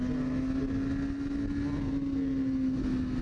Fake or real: real